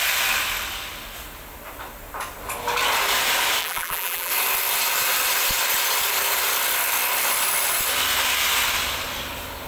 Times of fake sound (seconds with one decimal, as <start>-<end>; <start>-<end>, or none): 3.6-4.3